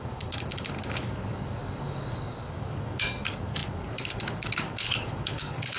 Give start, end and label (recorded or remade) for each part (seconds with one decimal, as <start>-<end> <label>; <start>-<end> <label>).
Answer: 0.0-5.8 remade